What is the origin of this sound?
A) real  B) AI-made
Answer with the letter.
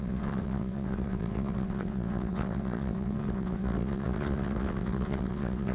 B